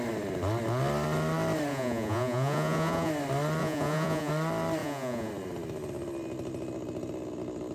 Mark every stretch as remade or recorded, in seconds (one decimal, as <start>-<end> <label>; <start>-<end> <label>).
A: 0.0-1.7 recorded; 1.7-3.1 remade; 3.1-3.6 recorded; 3.6-4.3 remade; 4.3-4.8 recorded; 4.8-5.3 remade; 5.3-7.7 recorded